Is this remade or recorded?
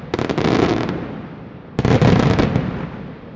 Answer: recorded